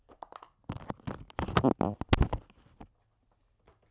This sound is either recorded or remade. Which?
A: recorded